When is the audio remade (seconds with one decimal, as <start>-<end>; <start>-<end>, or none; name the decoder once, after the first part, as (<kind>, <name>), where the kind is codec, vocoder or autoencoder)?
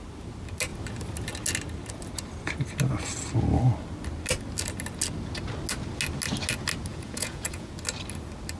6.9-7.7 (vocoder, Vocos)